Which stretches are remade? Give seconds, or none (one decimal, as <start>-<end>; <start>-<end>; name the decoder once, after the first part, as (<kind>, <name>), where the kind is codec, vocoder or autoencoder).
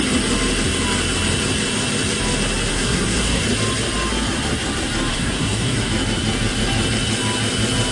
2.7-3.4 (codec, SNAC); 5.1-5.9